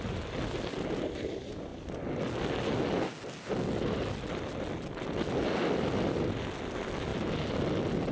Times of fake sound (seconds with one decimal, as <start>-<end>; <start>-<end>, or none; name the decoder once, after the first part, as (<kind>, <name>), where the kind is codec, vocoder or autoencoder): none